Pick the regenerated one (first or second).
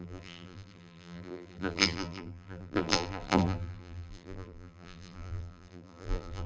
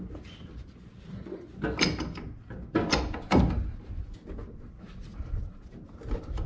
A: first